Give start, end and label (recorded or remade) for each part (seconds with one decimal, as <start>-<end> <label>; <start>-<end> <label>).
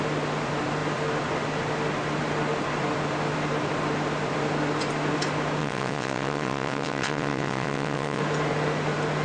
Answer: 0.0-5.6 recorded; 5.6-8.2 remade; 8.2-9.2 recorded